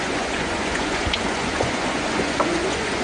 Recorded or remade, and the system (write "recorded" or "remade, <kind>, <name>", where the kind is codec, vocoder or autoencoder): remade, vocoder, Vocos